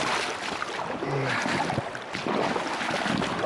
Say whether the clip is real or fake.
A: real